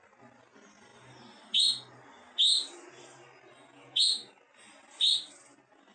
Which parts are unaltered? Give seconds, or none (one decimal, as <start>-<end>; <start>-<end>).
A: 0.0-5.9